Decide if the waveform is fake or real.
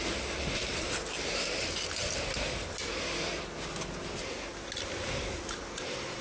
real